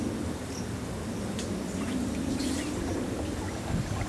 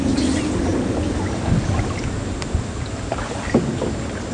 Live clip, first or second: second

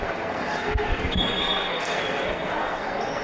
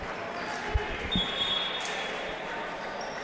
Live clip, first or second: second